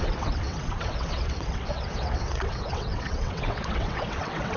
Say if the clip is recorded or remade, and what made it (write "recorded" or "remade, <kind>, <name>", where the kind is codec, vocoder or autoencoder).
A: remade, vocoder, WaveNeXt